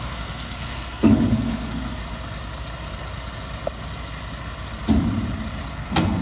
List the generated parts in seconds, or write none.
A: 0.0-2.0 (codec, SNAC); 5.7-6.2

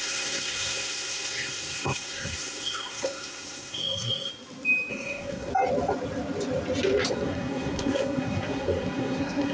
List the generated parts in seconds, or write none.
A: 0.0-4.3 (codec, SNAC); 4.9-5.5; 7.1-9.5

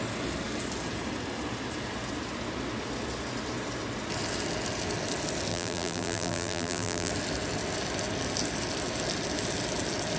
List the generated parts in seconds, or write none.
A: 5.5-7.1 (vocoder, BigVGAN v2)

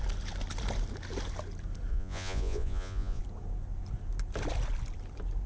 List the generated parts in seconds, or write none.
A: 1.9-3.2 (vocoder, Vocos)

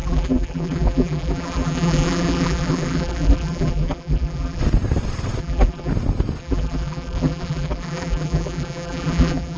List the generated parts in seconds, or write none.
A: 0.0-4.6 (vocoder, BigVGAN v2); 5.4-5.9; 6.4-9.6

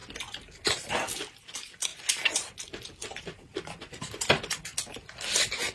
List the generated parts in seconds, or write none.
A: none

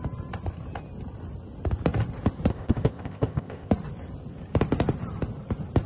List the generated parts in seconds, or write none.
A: 2.5-3.7 (codec, ZipCodec)

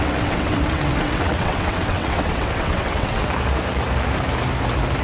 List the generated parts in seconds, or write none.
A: 0.0-3.2 (vocoder, WaveNeXt)